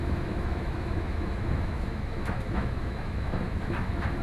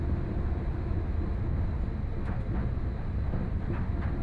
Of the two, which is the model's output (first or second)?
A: first